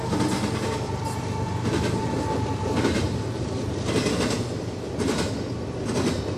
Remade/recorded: recorded